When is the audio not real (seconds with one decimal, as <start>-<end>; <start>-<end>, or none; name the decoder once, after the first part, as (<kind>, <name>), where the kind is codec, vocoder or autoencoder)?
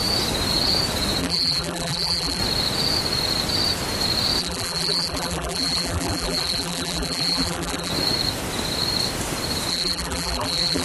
1.2-2.4 (vocoder, BigVGAN v2); 4.4-7.9; 9.7-10.8